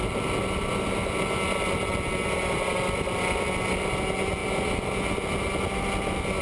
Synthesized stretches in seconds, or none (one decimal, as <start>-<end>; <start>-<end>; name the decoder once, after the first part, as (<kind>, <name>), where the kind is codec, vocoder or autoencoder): none

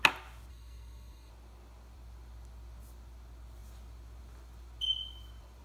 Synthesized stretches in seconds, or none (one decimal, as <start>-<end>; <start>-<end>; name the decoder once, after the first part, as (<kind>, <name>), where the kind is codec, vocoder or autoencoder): 0.5-1.3 (codec, SNAC)

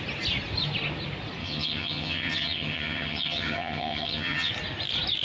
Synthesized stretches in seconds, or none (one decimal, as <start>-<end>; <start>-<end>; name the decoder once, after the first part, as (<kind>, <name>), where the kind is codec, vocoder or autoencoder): 1.4-4.5 (vocoder, HiFi-GAN)

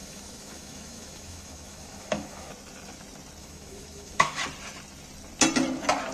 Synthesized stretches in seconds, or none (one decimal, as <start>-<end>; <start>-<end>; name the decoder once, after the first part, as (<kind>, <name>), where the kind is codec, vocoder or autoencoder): 0.0-2.5 (autoencoder, DAC-VAE); 3.4-4.4

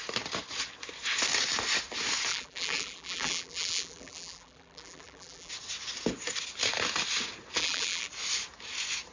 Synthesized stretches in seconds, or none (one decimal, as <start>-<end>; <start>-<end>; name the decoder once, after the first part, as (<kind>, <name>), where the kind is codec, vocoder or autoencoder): 2.3-5.5 (vocoder, BigVGAN v2); 7.6-8.1

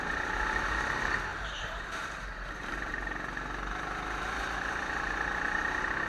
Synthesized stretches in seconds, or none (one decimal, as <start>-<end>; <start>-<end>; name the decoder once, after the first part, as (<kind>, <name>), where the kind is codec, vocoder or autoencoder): 1.3-2.9 (vocoder, BigVGAN v2)

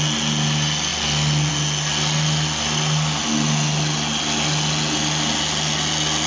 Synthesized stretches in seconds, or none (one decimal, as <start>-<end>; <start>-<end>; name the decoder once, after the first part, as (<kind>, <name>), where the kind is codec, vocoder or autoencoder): none

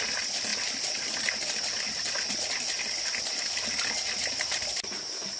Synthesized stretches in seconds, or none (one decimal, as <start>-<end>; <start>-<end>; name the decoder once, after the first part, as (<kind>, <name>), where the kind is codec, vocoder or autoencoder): none